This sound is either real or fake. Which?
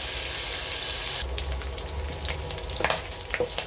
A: real